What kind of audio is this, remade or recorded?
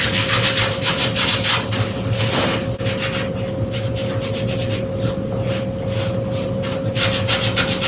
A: recorded